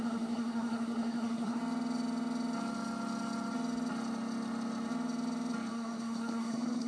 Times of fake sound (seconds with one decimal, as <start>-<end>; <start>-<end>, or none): 0.0-1.6; 5.7-6.9